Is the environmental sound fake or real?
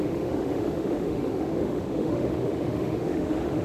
fake